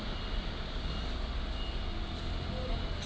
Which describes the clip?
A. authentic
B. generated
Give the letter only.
A